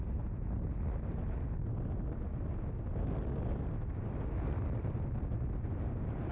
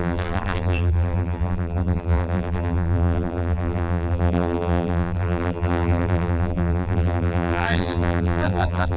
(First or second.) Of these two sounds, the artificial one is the second